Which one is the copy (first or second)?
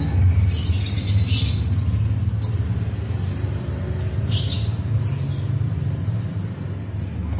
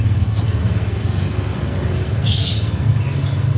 second